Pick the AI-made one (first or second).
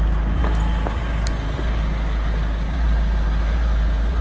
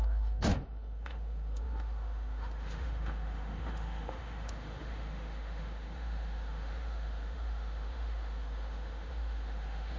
second